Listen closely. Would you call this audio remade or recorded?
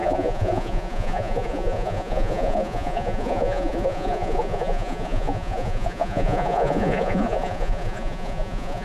remade